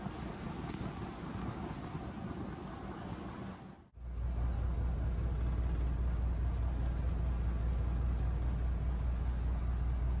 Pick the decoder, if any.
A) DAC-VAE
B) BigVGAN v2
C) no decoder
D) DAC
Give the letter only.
C